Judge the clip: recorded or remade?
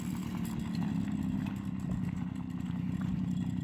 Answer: recorded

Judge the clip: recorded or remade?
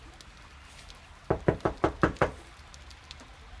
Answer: recorded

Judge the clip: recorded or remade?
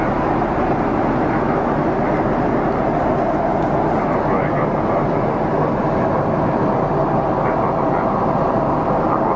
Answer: recorded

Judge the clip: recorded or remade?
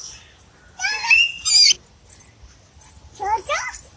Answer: recorded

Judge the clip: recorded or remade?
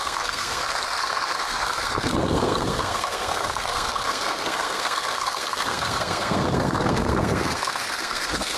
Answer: remade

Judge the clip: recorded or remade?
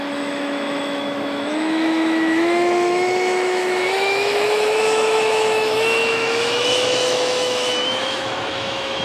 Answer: remade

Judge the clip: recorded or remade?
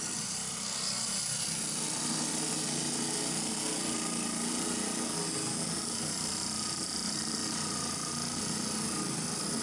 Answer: recorded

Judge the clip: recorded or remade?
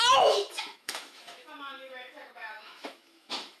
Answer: remade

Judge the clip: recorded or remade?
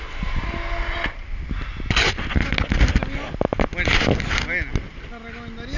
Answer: recorded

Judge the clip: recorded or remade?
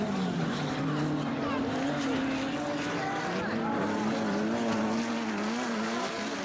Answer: recorded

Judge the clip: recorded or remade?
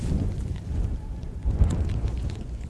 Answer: remade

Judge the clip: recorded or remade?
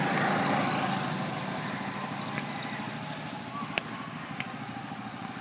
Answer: recorded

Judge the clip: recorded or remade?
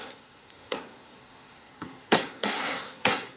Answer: remade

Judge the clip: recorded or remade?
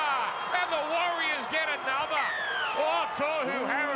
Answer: recorded